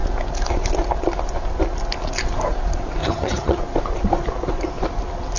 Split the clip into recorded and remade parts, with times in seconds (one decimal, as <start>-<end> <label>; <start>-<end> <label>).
0.0-3.0 recorded; 3.0-3.6 remade; 3.6-5.4 recorded